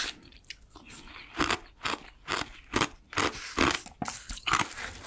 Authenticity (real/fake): real